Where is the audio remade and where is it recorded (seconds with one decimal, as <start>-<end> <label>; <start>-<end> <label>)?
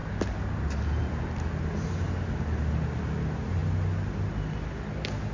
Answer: 0.0-5.3 recorded